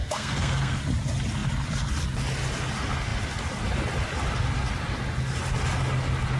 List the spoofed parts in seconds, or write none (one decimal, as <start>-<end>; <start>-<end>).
0.0-0.8